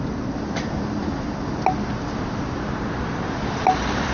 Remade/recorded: recorded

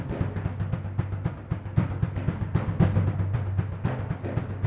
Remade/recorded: recorded